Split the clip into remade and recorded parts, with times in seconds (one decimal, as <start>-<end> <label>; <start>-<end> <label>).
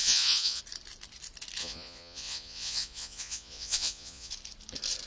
0.0-0.6 remade; 0.6-1.6 recorded; 1.6-4.3 remade; 4.3-5.1 recorded